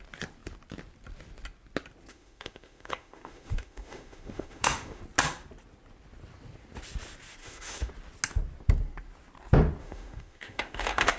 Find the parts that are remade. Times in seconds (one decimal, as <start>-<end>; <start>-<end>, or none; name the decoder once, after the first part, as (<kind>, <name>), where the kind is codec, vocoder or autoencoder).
2.1-5.0 (autoencoder, DAC-VAE); 7.4-7.9; 9.8-11.2